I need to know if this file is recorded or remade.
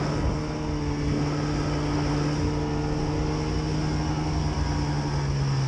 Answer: recorded